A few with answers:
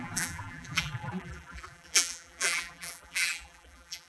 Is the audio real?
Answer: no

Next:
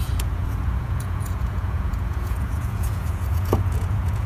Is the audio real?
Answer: no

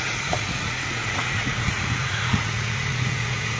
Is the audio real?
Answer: no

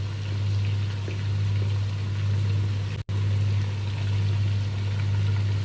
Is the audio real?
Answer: yes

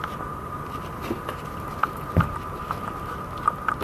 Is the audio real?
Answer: yes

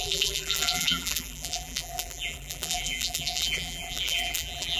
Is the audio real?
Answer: no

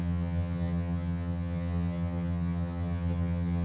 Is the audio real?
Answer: no